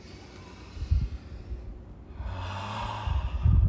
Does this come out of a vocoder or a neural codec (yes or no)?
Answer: no